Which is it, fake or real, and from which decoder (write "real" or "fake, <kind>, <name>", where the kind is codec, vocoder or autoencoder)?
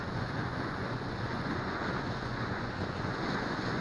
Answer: fake, vocoder, Vocos